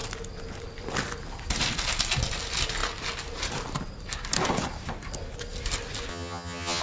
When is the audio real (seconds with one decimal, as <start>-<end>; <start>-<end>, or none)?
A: 0.0-6.1